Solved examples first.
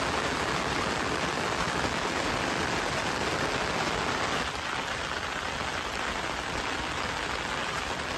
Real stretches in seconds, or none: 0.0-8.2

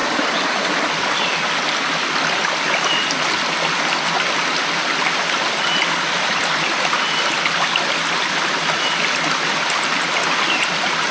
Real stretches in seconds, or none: 0.0-11.1

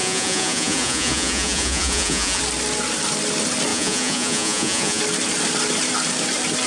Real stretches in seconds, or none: 2.4-3.7; 5.0-6.7

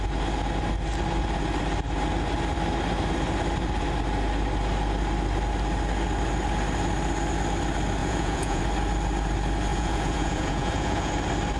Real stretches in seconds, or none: 0.0-8.0; 8.6-9.7; 11.1-11.6

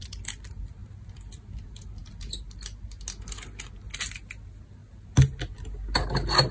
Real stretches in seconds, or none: 0.0-6.5

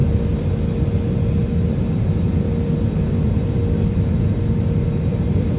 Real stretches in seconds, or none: 0.0-5.6

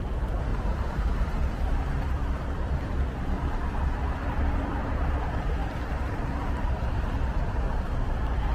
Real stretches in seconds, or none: none

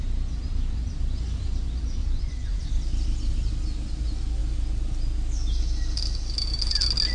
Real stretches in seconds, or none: 0.0-2.0; 2.7-7.1